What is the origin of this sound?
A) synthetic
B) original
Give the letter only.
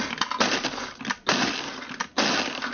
B